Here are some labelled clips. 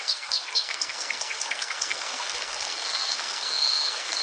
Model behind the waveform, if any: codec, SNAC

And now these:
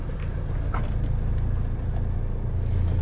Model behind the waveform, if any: none